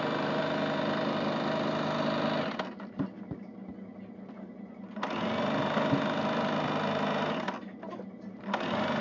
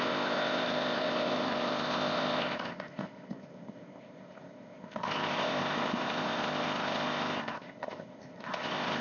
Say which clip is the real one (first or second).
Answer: first